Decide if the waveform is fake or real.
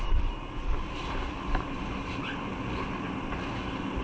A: real